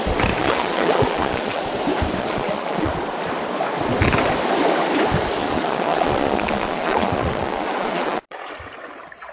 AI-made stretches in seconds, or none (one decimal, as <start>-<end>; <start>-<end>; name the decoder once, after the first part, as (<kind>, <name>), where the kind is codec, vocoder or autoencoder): 0.4-1.6 (vocoder, Vocos); 2.2-2.9; 5.4-8.5